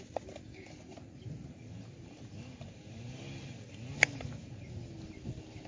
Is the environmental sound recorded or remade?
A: recorded